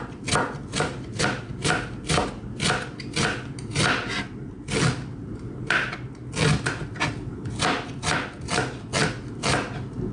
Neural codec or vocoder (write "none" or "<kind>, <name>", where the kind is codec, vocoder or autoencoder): none